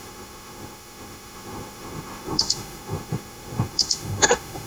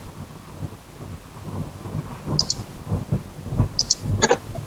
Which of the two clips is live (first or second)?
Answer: second